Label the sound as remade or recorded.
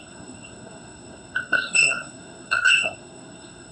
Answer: remade